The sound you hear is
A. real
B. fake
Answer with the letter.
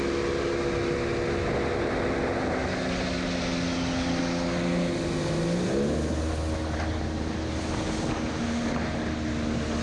A